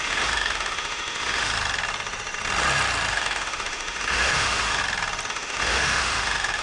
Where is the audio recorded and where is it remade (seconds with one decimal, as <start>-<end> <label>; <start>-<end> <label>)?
0.0-1.5 remade; 1.5-3.1 recorded; 3.1-4.8 remade; 4.8-5.3 recorded; 5.3-6.6 remade

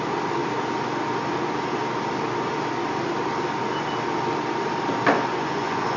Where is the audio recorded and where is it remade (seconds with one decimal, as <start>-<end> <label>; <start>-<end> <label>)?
0.0-5.3 recorded; 5.3-6.0 remade